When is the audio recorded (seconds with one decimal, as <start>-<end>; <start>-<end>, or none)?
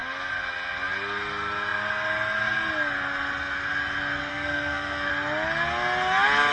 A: 0.0-4.3; 5.1-6.5